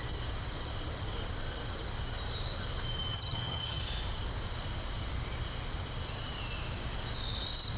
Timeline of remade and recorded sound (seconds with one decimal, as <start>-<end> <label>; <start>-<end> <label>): 0.0-3.1 recorded; 3.1-3.8 remade; 3.8-7.8 recorded